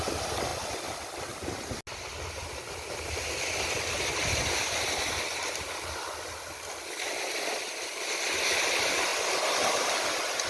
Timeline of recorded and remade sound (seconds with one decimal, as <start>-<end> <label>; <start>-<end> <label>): 0.0-10.5 recorded